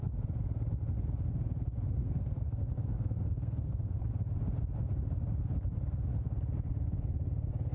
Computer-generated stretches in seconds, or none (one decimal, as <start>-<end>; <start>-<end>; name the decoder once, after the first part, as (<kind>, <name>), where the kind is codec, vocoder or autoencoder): 2.0-4.0 (codec, SNAC)